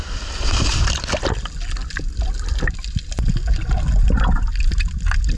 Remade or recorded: recorded